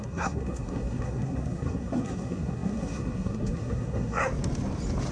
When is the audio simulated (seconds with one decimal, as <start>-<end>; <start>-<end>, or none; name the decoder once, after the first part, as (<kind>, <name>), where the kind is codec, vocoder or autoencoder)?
0.0-4.2 (codec, SNAC)